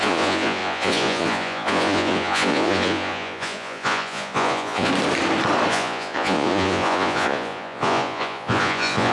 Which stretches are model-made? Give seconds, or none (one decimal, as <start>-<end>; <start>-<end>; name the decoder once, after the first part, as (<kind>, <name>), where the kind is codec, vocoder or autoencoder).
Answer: 0.0-4.9 (vocoder, Vocos); 5.7-9.1